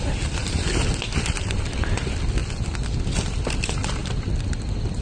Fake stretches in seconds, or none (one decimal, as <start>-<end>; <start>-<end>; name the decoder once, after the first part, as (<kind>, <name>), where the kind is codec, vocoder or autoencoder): 0.0-0.4 (vocoder, BigVGAN v2); 1.2-2.4; 3.0-4.0